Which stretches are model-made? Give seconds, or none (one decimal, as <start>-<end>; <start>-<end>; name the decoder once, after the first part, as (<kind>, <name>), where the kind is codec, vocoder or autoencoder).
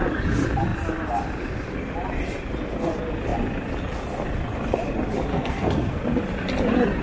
5.3-6.0 (codec, SNAC)